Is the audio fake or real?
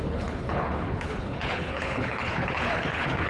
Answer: fake